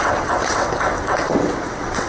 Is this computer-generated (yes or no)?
yes